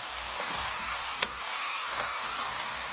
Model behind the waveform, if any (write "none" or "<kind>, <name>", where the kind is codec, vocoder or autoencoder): codec, DAC